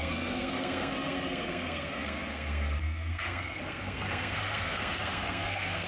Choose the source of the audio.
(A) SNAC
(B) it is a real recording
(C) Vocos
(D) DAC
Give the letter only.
A